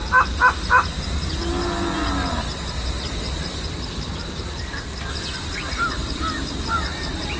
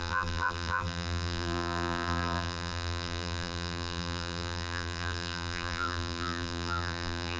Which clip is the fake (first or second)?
second